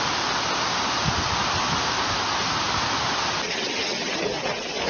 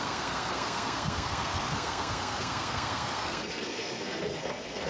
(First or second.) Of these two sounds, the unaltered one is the first